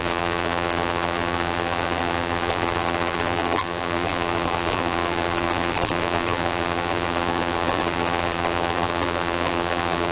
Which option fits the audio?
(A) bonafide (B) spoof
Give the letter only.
B